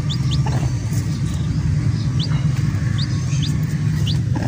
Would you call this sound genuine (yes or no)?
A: yes